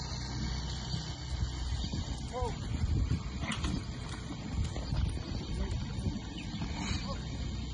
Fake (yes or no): no